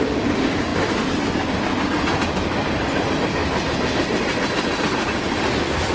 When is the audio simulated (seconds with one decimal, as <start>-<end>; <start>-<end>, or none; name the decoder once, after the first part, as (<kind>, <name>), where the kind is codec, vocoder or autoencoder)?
0.0-3.4 (vocoder, BigVGAN v2); 4.8-5.9